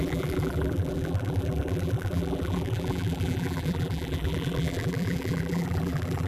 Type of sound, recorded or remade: remade